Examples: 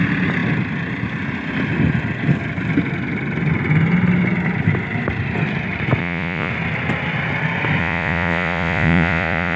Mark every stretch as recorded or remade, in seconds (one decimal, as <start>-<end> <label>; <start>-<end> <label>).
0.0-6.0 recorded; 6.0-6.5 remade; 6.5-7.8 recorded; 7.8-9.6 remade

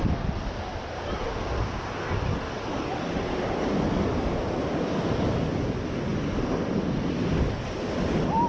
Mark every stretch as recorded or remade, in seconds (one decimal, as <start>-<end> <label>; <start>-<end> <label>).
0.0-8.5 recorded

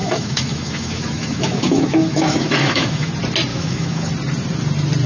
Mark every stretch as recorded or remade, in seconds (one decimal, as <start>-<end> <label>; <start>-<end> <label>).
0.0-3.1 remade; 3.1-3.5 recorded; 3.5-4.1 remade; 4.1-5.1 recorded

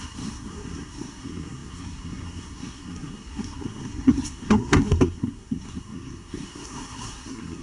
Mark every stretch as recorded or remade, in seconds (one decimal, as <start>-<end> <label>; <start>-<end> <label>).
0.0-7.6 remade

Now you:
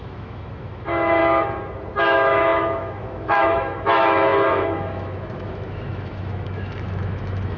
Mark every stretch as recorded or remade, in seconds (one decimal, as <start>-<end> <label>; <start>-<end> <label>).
0.0-1.2 remade; 1.2-2.0 recorded; 2.0-7.6 remade

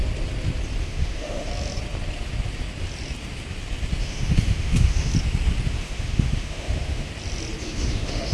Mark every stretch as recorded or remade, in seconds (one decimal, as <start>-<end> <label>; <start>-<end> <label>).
0.0-0.8 recorded; 0.8-1.5 remade; 1.5-4.0 recorded; 4.0-5.1 remade; 5.1-5.7 recorded; 5.7-7.1 remade; 7.1-7.6 recorded; 7.6-8.3 remade

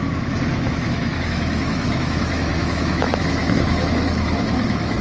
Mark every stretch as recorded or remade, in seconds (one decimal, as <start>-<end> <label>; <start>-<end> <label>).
0.0-5.0 remade